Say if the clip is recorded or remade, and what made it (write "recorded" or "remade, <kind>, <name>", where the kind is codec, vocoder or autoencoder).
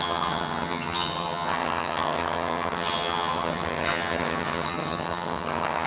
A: remade, vocoder, HiFi-GAN